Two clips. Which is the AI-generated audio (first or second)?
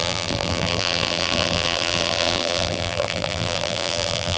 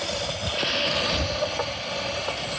first